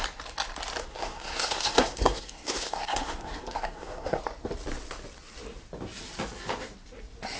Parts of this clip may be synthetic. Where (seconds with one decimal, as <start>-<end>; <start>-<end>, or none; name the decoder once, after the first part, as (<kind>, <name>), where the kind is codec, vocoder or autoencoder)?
0.8-4.2 (codec, SNAC)